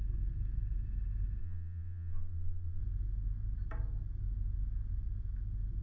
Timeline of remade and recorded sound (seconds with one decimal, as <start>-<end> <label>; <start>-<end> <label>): 0.0-1.4 recorded; 1.4-2.8 remade; 2.8-5.8 recorded

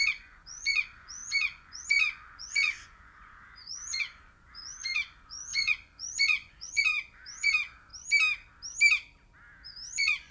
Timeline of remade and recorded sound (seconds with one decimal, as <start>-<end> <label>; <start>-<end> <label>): 0.0-7.9 remade; 7.9-9.9 recorded; 9.9-10.3 remade

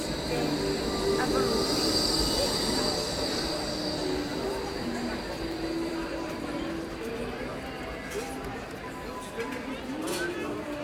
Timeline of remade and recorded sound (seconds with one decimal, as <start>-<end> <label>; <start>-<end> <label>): 0.0-4.3 recorded; 4.3-6.3 remade; 6.3-10.8 recorded